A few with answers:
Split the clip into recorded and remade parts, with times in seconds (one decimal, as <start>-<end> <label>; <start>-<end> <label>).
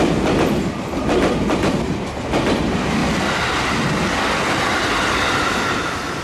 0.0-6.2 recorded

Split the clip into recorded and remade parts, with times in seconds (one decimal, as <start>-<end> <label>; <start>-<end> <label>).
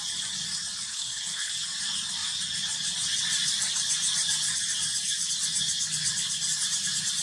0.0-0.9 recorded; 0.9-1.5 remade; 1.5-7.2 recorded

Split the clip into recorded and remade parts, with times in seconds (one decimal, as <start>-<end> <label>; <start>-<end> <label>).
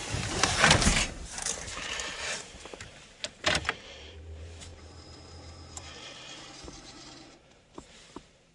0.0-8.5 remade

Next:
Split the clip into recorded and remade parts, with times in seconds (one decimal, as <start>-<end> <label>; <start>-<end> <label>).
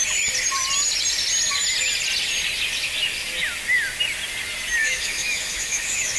0.0-4.8 recorded; 4.8-6.2 remade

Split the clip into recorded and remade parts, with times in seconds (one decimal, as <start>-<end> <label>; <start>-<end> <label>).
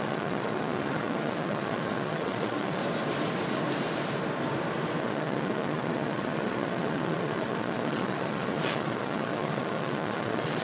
0.0-2.8 remade; 2.8-5.0 recorded; 5.0-10.6 remade